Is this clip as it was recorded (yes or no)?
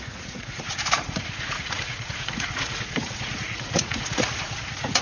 no